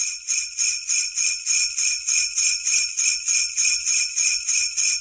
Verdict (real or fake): fake